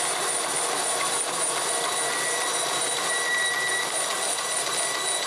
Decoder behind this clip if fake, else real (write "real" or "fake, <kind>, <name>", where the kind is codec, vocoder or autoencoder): real